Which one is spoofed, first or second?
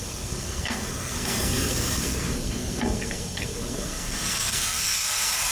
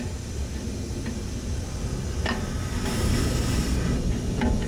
first